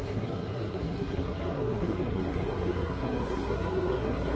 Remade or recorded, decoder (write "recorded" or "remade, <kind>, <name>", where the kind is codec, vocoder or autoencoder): remade, codec, SNAC